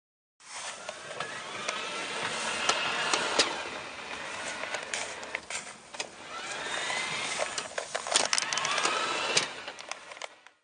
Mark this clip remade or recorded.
recorded